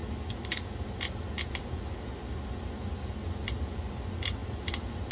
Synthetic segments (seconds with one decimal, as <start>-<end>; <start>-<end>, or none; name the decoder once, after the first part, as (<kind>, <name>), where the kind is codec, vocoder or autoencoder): none